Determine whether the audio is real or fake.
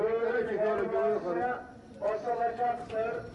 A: real